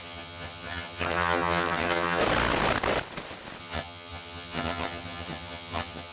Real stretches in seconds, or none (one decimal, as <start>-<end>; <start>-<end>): 2.2-3.6